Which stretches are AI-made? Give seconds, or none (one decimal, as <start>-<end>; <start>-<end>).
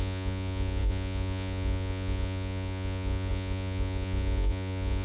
0.0-5.0